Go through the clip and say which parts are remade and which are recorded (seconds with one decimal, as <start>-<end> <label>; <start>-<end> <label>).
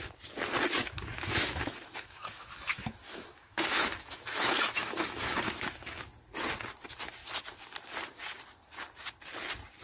0.0-0.8 recorded; 0.8-6.0 remade; 6.0-9.8 recorded